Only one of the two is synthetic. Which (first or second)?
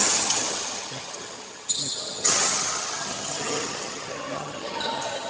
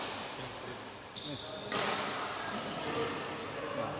first